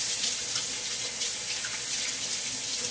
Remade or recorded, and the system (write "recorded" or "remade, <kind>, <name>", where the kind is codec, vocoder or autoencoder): recorded